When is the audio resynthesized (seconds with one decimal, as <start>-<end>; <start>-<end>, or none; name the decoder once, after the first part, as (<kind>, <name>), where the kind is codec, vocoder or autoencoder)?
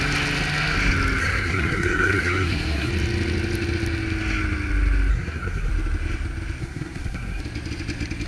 1.2-2.9 (codec, SNAC); 5.1-5.7; 6.6-7.4